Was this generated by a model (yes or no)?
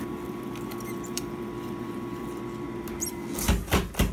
yes